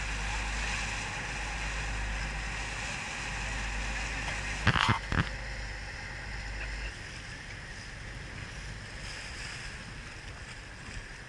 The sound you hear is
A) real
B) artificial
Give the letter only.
A